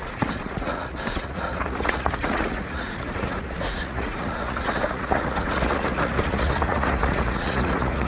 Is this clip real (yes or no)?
no